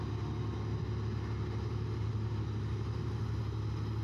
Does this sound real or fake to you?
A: real